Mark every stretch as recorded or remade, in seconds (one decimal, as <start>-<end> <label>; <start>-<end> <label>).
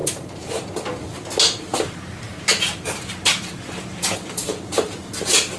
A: 0.0-0.7 remade; 0.7-1.7 recorded; 1.7-5.1 remade; 5.1-5.6 recorded